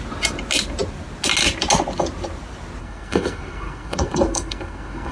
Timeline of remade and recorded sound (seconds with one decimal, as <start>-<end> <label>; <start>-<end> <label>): 0.0-2.8 recorded; 2.8-5.1 remade